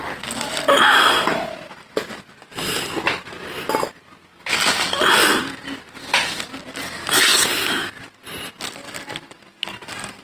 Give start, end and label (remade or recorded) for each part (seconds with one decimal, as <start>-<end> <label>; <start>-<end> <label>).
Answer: 0.0-10.2 recorded

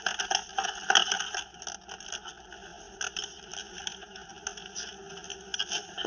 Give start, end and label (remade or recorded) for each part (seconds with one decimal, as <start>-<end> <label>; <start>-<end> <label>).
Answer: 0.0-6.1 recorded

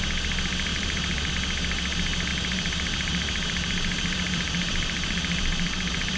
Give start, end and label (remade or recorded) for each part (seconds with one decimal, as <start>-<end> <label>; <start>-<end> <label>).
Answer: 0.0-0.7 recorded; 0.7-1.3 remade; 1.3-2.3 recorded; 2.3-6.2 remade

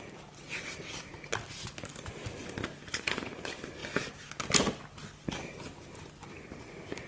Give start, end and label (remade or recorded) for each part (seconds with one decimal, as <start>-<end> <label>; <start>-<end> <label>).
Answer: 0.0-1.1 remade; 1.1-1.9 recorded; 1.9-2.4 remade; 2.4-2.9 recorded; 2.9-3.8 remade; 3.8-5.6 recorded; 5.6-7.1 remade

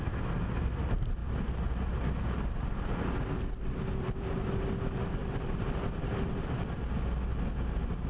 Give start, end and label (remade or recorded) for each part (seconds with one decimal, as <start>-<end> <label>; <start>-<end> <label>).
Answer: 0.0-1.2 recorded; 1.2-4.3 remade; 4.3-5.2 recorded; 5.2-6.7 remade; 6.7-8.1 recorded

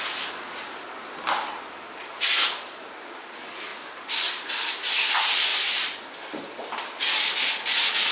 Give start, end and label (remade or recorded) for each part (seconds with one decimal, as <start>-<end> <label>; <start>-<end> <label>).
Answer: 0.0-3.7 recorded; 3.7-4.6 remade; 4.6-5.5 recorded; 5.5-7.0 remade; 7.0-8.1 recorded